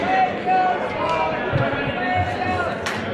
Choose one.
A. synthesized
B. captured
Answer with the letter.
B